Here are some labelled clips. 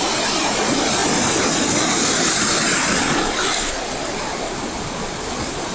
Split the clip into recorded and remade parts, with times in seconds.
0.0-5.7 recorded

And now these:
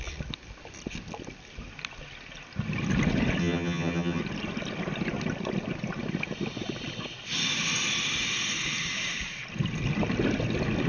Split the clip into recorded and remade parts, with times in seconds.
0.0-3.4 recorded; 3.4-4.2 remade; 4.2-10.9 recorded

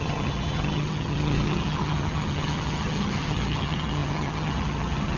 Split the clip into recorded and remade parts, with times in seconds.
0.0-5.2 remade

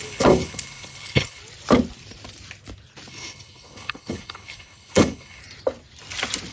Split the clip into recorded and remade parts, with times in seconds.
0.0-1.4 remade; 1.4-3.1 recorded; 3.1-5.4 remade; 5.4-6.5 recorded

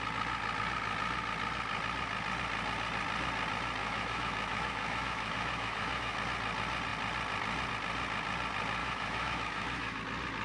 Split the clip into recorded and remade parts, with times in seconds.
0.0-3.8 recorded; 3.8-6.2 remade; 6.2-8.8 recorded; 8.8-10.0 remade; 10.0-10.4 recorded

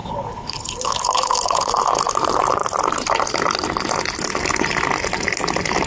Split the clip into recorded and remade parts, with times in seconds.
0.0-1.7 remade; 1.7-5.9 recorded

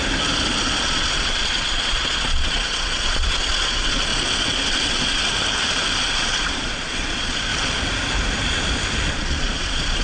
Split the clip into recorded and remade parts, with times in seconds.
0.0-0.8 recorded; 0.8-4.1 remade; 4.1-4.7 recorded; 4.7-5.2 remade; 5.2-6.1 recorded; 6.1-7.5 remade; 7.5-9.1 recorded; 9.1-10.0 remade

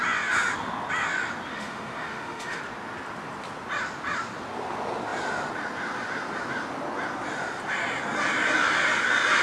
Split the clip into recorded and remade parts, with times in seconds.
0.0-1.5 recorded; 1.5-2.6 remade; 2.6-9.4 recorded